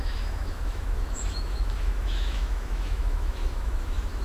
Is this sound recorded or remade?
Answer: remade